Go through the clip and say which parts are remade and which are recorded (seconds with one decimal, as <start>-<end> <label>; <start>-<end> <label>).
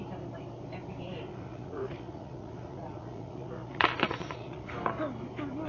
0.0-1.3 recorded; 1.3-4.7 remade; 4.7-5.7 recorded